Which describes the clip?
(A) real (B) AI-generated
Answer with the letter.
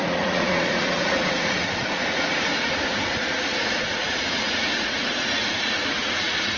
B